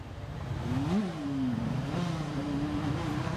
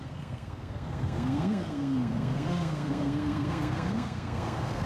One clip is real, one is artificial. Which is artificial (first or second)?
second